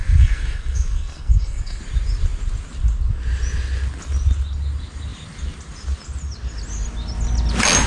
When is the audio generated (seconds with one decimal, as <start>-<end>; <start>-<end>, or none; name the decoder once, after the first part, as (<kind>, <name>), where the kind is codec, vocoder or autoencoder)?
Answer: 0.0-1.8 (codec, SNAC)